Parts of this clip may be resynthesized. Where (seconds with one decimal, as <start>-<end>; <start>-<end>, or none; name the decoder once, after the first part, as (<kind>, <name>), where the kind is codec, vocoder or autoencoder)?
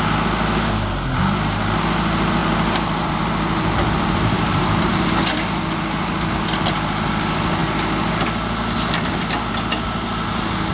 2.4-5.1 (vocoder, BigVGAN v2)